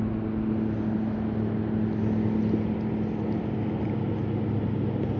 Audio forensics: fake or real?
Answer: real